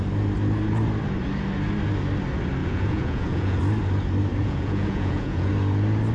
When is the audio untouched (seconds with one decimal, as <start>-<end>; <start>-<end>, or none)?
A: 0.0-2.6; 3.6-4.4; 5.5-6.1